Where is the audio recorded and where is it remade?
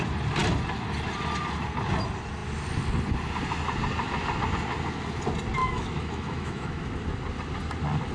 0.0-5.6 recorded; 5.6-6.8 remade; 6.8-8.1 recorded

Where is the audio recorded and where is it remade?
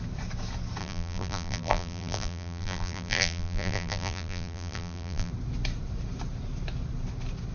0.0-0.8 recorded; 0.8-5.3 remade; 5.3-7.5 recorded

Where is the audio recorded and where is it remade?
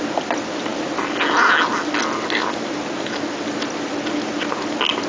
0.0-5.1 recorded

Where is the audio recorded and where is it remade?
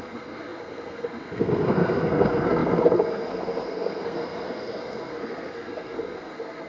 0.0-6.7 remade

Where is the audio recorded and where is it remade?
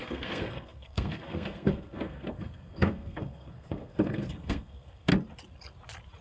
0.0-5.1 remade; 5.1-6.2 recorded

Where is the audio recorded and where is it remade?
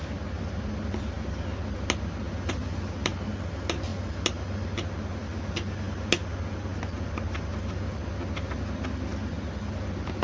0.0-10.2 recorded